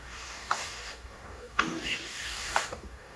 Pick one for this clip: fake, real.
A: fake